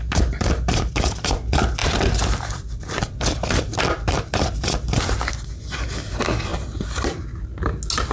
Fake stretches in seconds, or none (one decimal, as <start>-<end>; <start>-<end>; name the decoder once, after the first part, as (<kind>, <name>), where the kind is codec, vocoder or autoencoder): 1.8-5.3 (vocoder, BigVGAN v2); 6.5-7.2

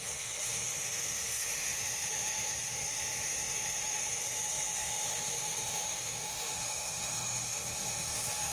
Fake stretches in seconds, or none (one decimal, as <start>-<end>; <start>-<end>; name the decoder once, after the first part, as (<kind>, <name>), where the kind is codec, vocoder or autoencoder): 0.0-8.5 (autoencoder, DAC-VAE)